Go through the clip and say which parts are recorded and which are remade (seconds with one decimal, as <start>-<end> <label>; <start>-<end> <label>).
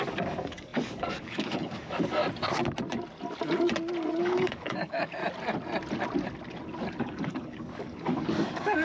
0.0-2.2 remade; 2.2-4.2 recorded; 4.2-5.2 remade; 5.2-7.0 recorded; 7.0-8.8 remade